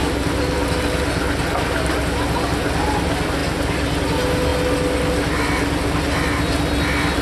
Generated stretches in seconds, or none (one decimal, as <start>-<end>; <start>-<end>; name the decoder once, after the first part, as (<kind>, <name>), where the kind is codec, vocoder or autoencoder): none